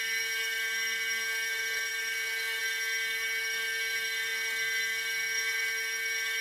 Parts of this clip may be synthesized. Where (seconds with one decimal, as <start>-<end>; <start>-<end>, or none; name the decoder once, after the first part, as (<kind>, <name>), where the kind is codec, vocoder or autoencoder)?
0.0-6.4 (codec, SNAC)